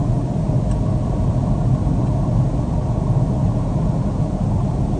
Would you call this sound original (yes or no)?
yes